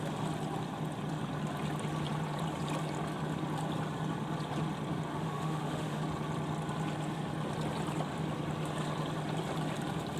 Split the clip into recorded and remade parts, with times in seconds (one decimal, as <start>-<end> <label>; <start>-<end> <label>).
0.0-5.1 recorded; 5.1-6.0 remade; 6.0-10.2 recorded